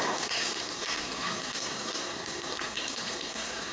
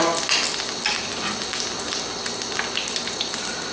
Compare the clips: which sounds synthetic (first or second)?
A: first